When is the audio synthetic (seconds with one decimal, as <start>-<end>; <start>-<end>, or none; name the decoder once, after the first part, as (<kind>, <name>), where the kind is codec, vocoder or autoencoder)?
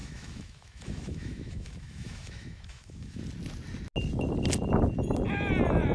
0.0-3.2 (autoencoder, DAC-VAE)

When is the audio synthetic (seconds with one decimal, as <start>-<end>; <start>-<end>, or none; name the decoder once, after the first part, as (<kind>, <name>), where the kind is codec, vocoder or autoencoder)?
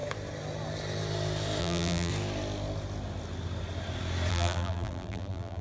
1.6-2.1 (vocoder, BigVGAN v2); 4.3-5.6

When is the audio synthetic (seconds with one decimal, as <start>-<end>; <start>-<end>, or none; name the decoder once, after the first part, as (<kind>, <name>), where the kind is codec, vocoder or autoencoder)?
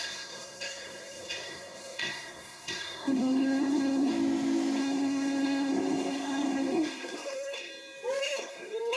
0.0-4.1 (codec, SNAC); 4.8-7.7; 8.2-9.0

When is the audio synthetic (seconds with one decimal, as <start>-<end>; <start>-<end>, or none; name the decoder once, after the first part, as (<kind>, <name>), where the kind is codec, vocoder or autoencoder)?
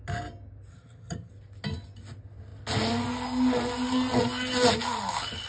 0.7-1.3 (vocoder, HiFi-GAN)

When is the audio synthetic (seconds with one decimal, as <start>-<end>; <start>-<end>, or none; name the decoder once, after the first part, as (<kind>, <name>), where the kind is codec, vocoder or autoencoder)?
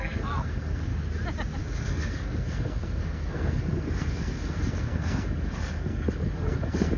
0.0-0.9 (codec, SNAC); 1.6-7.0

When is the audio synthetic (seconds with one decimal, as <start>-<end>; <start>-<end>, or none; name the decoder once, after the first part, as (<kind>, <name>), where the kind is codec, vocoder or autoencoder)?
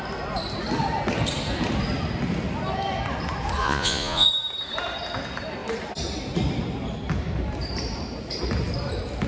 3.6-4.3 (vocoder, Vocos)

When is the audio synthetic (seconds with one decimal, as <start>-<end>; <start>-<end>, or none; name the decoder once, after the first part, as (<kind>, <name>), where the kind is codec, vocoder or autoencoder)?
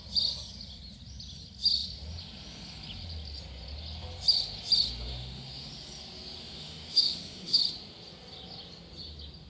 5.1-5.7 (autoencoder, DAC-VAE); 6.4-7.6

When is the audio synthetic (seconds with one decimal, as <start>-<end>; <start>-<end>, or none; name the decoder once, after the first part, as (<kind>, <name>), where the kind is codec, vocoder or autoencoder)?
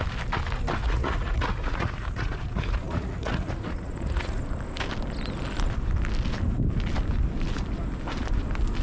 0.8-4.4 (vocoder, Vocos)